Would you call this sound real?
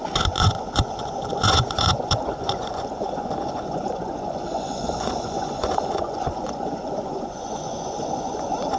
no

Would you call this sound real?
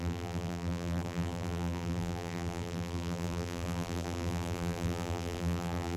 no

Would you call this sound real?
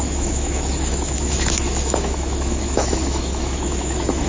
no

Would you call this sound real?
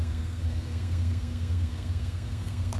no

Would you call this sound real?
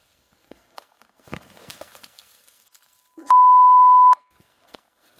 no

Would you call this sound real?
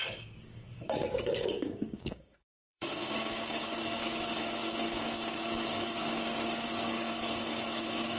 no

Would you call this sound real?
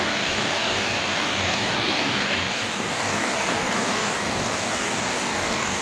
no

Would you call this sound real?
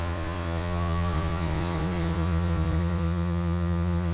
no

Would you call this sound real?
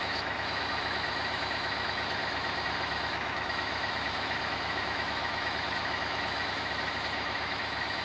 no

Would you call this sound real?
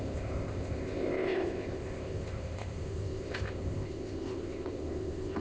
no